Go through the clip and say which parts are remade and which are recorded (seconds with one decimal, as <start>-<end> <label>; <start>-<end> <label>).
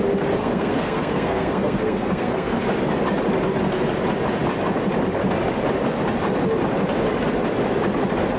0.0-0.4 recorded; 0.4-2.6 remade; 2.6-8.4 recorded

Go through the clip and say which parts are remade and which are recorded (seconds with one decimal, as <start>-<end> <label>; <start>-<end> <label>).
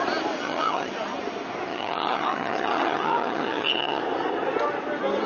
0.0-0.4 recorded; 0.4-0.9 remade; 0.9-1.7 recorded; 1.7-4.0 remade; 4.0-5.3 recorded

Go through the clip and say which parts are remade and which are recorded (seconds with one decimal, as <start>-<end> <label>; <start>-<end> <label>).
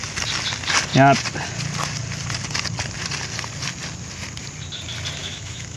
0.0-5.2 recorded; 5.2-5.8 remade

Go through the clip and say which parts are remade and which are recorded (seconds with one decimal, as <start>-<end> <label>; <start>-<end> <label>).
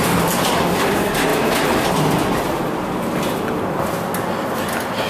0.0-5.1 recorded